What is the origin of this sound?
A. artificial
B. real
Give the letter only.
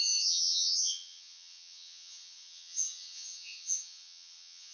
A